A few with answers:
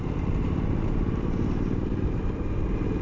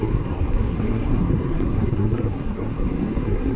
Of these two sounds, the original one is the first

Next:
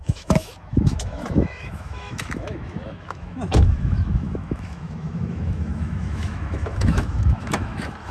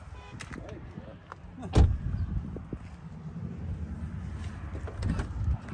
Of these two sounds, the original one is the second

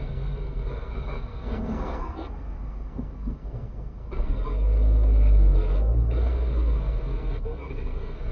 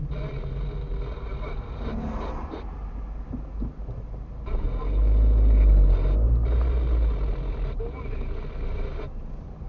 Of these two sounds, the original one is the second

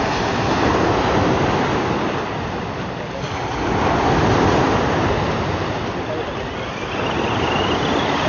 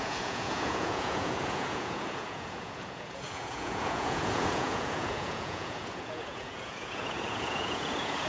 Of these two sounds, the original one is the first